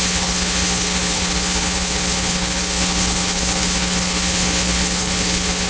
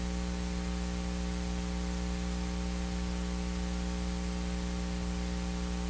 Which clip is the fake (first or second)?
first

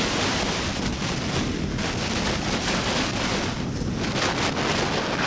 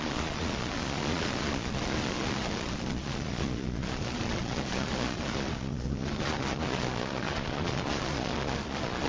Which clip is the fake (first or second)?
second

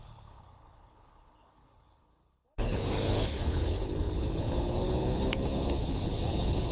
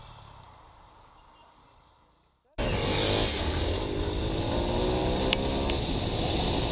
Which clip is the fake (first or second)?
first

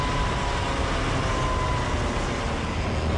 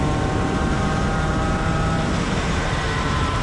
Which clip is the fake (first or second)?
second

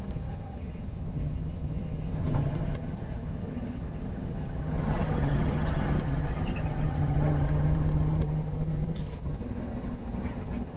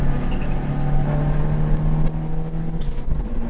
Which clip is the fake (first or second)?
first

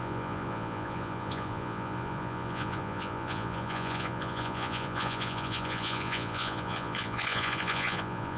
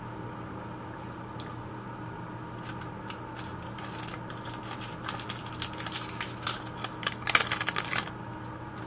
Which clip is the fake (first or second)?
first